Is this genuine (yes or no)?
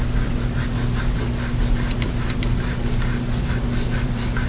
no